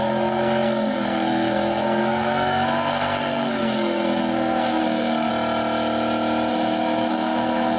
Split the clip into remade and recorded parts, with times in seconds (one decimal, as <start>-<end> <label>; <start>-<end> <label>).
0.0-5.3 remade; 5.3-6.5 recorded; 6.5-7.8 remade